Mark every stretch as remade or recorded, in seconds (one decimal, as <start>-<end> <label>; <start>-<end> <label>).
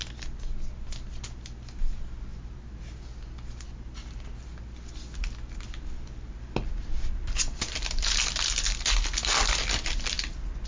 0.0-10.7 recorded